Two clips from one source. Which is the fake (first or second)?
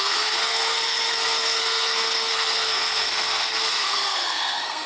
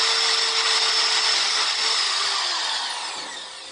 first